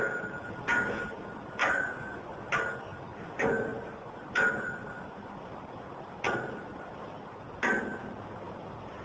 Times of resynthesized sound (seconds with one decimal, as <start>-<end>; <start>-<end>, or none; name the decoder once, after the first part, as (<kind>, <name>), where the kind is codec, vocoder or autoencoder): 1.6-2.5 (vocoder, Vocos); 3.7-5.4